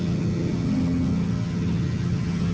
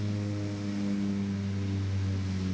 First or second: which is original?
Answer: second